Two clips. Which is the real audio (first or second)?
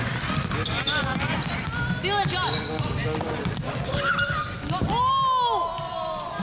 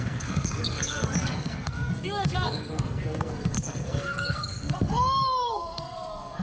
first